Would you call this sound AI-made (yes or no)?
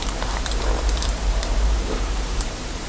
yes